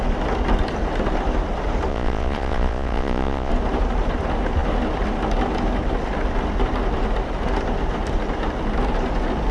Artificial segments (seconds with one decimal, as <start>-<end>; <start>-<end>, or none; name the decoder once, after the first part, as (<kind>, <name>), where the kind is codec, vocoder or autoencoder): 1.9-3.5 (vocoder, Vocos)

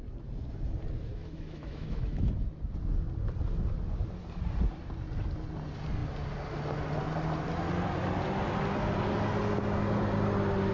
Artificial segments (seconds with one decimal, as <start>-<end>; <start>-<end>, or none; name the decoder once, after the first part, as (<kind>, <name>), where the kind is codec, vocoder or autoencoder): 1.2-2.3 (autoencoder, DAC-VAE)

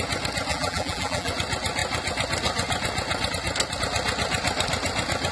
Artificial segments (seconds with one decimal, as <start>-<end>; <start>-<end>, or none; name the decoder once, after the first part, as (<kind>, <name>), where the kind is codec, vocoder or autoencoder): 0.5-1.3 (vocoder, BigVGAN v2)

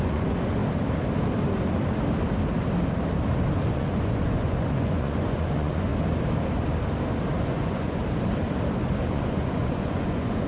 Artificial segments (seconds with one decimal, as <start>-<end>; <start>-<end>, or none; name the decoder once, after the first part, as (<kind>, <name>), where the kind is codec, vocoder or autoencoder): 0.0-0.6 (vocoder, Vocos); 3.7-5.9; 7.4-8.0; 9.0-10.5

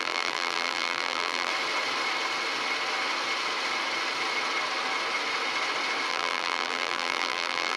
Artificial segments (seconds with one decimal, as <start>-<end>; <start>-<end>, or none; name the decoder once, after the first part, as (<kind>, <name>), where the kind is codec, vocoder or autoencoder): 0.0-1.5 (vocoder, BigVGAN v2); 6.1-7.8

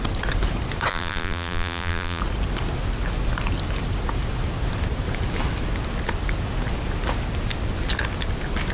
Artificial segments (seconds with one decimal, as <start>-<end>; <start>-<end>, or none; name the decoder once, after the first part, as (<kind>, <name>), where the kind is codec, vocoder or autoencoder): 0.9-2.2 (vocoder, BigVGAN v2)